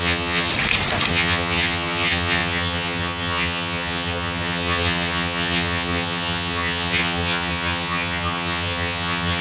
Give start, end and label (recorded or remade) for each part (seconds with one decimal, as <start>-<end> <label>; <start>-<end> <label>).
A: 0.0-0.5 remade; 0.5-1.1 recorded; 1.1-9.4 remade

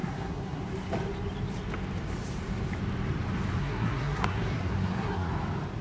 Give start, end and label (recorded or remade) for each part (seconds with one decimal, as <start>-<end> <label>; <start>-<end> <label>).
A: 0.0-0.6 remade; 0.6-3.6 recorded; 3.6-5.3 remade; 5.3-5.8 recorded

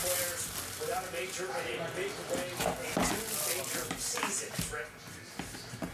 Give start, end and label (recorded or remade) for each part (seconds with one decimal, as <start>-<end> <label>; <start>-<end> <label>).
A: 0.0-5.9 recorded

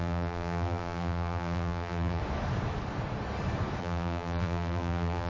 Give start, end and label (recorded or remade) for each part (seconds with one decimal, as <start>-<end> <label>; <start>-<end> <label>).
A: 0.0-2.2 remade; 2.2-3.8 recorded; 3.8-5.3 remade

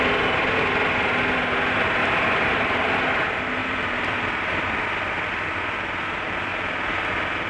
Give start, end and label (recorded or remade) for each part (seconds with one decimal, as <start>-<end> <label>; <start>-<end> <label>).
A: 0.0-2.0 recorded; 2.0-3.1 remade; 3.1-3.6 recorded; 3.6-5.6 remade; 5.6-7.5 recorded

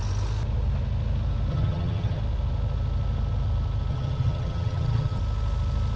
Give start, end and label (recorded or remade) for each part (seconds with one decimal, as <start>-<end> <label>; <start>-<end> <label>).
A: 0.0-1.5 recorded; 1.5-2.2 remade; 2.2-3.9 recorded; 3.9-5.2 remade; 5.2-6.0 recorded

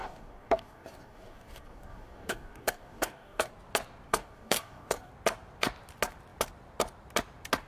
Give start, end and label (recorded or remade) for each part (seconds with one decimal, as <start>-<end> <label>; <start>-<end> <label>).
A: 0.0-3.5 remade; 3.5-4.1 recorded; 4.1-5.1 remade; 5.1-7.7 recorded